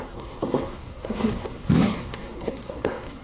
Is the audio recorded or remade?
remade